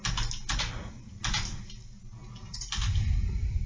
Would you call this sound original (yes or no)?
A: yes